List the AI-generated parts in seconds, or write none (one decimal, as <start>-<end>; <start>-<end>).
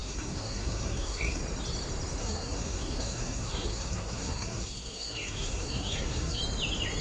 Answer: 0.0-1.4; 2.2-6.4